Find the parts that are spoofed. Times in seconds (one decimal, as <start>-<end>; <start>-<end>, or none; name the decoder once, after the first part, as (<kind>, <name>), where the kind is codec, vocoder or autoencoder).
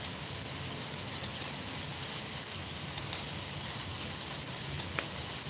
1.9-3.3 (vocoder, BigVGAN v2)